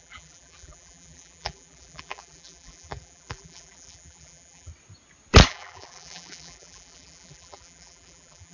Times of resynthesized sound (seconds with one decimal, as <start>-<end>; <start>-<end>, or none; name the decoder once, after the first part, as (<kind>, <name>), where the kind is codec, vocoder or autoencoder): 0.0-4.7 (vocoder, BigVGAN v2); 5.5-8.5